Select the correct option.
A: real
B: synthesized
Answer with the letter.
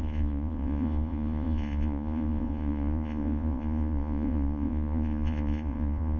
B